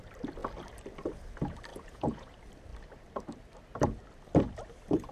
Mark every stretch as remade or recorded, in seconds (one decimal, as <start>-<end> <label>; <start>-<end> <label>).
0.0-1.7 recorded; 1.7-2.3 remade; 2.3-5.1 recorded